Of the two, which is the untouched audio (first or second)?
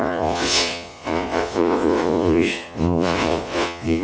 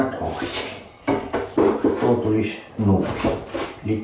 second